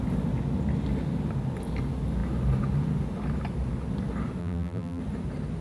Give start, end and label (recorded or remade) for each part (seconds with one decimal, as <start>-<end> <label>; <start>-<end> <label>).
0.0-4.4 recorded; 4.4-5.0 remade; 5.0-5.6 recorded